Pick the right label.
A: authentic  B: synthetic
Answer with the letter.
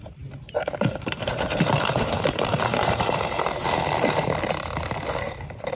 B